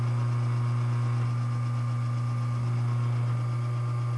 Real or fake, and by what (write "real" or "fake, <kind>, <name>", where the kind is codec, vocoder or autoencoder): real